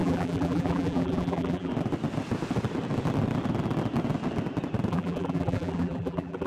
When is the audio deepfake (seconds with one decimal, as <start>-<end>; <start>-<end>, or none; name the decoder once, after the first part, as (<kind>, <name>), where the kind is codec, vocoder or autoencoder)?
0.0-1.7 (vocoder, BigVGAN v2); 4.9-6.5